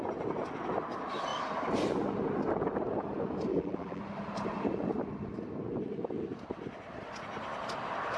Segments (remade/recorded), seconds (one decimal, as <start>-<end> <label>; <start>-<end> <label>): 0.0-3.5 recorded; 3.5-4.0 remade; 4.0-8.2 recorded